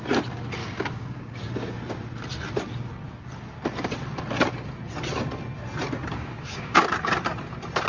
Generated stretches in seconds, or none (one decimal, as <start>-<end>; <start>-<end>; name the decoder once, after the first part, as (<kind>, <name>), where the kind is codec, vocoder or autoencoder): 0.6-1.5 (codec, DAC); 6.1-6.8